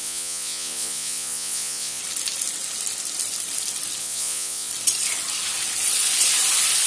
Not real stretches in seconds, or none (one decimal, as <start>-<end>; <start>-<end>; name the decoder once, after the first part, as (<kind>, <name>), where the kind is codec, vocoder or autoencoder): 0.0-2.0 (vocoder, Vocos); 4.0-4.7